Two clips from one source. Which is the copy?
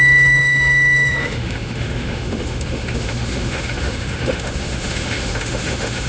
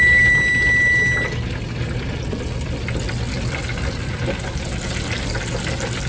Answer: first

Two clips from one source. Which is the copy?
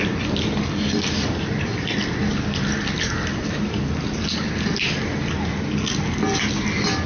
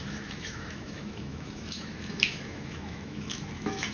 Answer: second